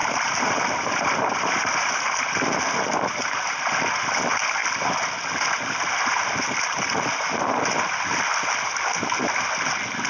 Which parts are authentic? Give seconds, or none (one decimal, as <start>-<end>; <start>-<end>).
1.9-10.1